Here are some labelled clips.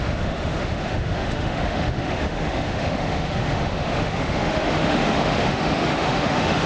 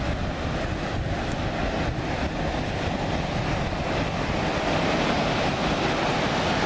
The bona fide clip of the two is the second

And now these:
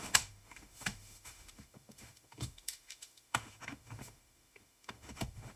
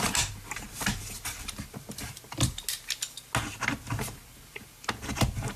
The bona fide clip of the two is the second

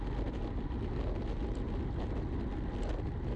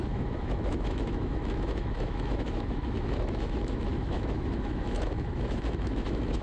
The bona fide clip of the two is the first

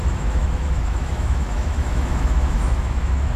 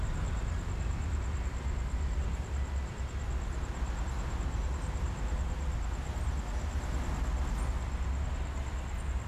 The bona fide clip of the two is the second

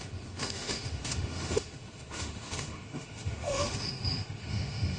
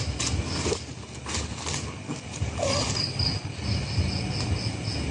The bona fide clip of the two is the second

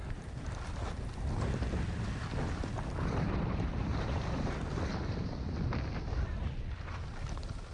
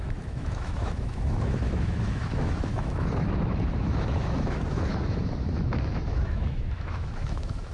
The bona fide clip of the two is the first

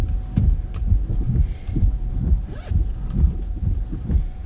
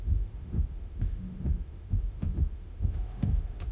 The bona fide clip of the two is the first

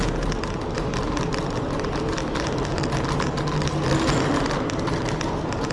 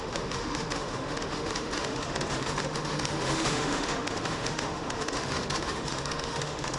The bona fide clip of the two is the first